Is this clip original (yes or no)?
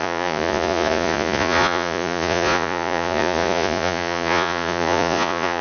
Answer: no